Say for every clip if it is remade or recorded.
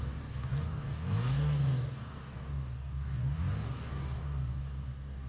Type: remade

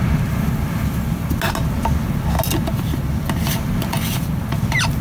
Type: recorded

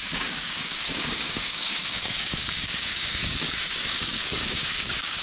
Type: remade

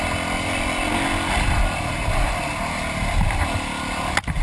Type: recorded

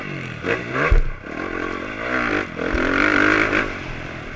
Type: recorded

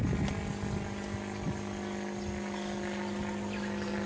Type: recorded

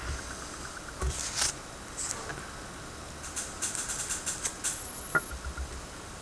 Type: recorded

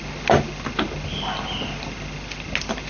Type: recorded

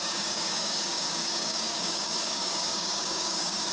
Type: remade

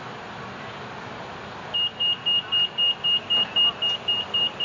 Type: recorded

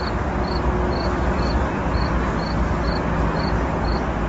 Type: recorded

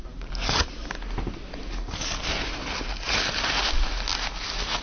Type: recorded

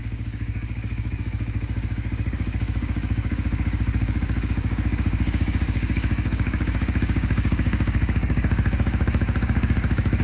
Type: remade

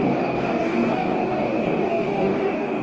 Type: remade